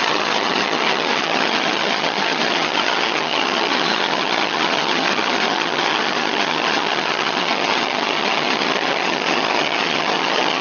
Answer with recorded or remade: remade